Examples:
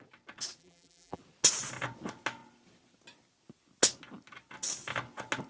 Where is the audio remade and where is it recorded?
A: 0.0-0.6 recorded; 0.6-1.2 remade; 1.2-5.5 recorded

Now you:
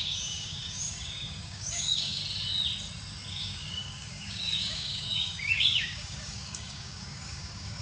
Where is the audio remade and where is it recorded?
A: 0.0-2.2 remade; 2.2-3.3 recorded; 3.3-7.8 remade

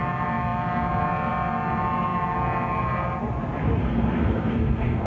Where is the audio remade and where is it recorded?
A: 0.0-3.8 recorded; 3.8-5.1 remade